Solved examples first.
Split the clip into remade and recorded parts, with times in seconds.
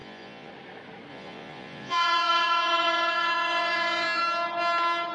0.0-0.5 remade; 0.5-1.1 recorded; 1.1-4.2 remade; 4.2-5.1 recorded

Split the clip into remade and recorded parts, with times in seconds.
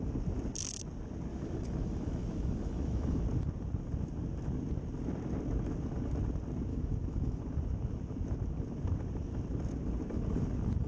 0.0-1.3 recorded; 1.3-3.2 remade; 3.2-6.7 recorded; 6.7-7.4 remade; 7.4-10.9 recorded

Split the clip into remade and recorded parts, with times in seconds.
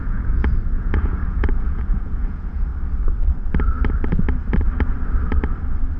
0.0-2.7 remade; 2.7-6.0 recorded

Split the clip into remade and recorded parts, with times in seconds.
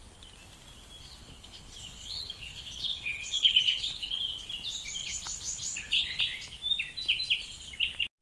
0.0-1.2 recorded; 1.2-4.2 remade; 4.2-5.0 recorded; 5.0-6.2 remade; 6.2-8.2 recorded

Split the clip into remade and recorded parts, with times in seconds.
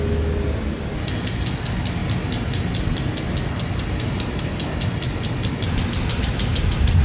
0.0-7.0 recorded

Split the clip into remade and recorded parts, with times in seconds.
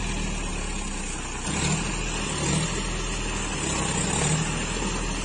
0.0-5.2 recorded